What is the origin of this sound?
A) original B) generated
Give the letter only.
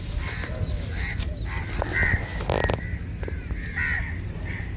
A